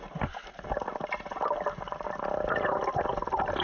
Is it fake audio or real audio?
real